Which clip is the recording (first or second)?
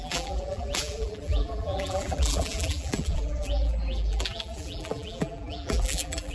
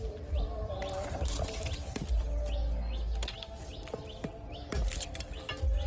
second